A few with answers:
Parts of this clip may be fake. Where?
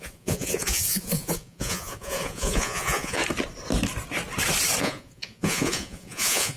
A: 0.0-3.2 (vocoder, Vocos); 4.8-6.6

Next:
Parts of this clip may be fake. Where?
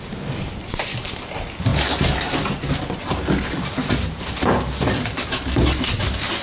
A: none